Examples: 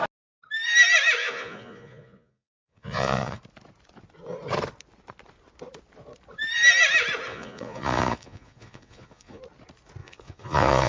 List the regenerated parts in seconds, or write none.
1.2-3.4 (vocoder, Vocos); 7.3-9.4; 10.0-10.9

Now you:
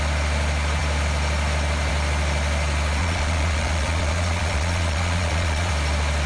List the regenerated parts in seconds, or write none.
3.0-5.7 (vocoder, Vocos)

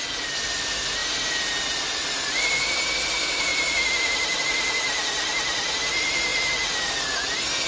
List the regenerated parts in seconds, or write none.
none